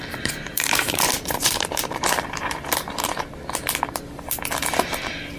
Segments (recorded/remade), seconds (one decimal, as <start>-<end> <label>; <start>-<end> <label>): 0.0-0.5 recorded; 0.5-3.2 remade; 3.2-5.4 recorded

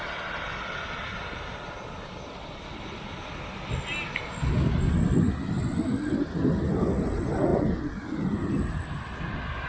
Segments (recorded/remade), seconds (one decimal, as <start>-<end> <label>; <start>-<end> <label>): 0.0-9.7 recorded

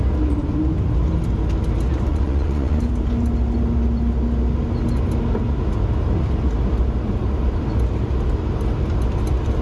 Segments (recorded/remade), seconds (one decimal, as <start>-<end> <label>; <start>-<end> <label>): 0.0-2.1 recorded; 2.1-2.8 remade; 2.8-9.6 recorded

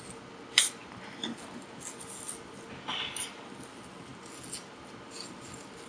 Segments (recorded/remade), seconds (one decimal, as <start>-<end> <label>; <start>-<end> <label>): 0.0-5.9 recorded

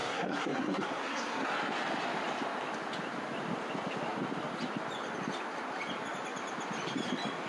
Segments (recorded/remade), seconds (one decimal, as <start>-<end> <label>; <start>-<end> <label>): 0.0-1.5 remade; 1.5-7.5 recorded

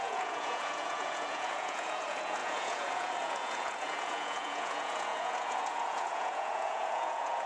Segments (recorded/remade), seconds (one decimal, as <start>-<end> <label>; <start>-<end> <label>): 0.0-7.5 remade